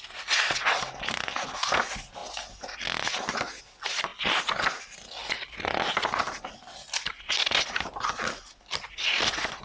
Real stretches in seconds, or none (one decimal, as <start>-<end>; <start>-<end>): 0.0-9.6